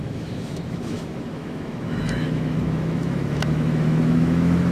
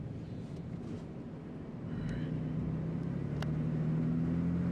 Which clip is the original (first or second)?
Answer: second